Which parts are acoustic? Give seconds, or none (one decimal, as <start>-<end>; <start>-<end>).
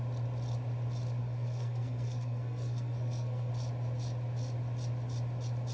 0.0-1.2; 3.5-5.7